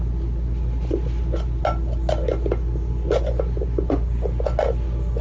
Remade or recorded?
recorded